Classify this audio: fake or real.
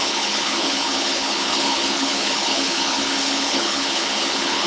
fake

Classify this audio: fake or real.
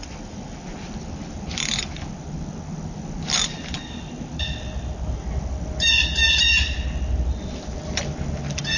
real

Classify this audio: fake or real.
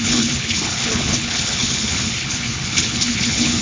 fake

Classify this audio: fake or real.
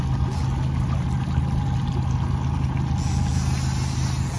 real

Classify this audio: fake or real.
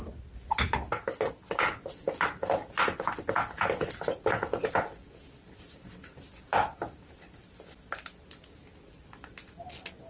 real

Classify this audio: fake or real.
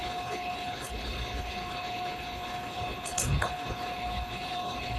fake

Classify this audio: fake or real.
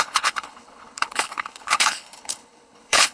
fake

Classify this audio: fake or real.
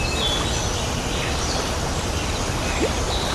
real